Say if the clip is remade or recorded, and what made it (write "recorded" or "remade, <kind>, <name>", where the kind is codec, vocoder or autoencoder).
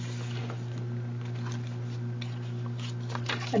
recorded